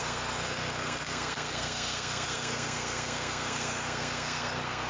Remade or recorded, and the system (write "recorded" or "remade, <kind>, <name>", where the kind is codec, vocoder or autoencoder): remade, codec, SNAC